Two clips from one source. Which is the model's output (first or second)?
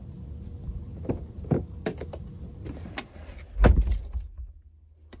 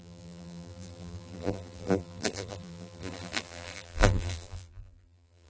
second